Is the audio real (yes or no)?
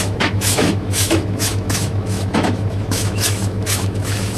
no